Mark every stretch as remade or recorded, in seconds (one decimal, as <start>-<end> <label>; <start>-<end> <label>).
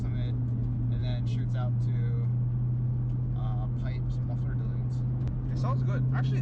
0.0-6.4 recorded